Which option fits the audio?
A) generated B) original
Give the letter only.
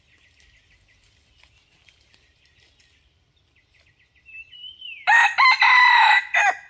A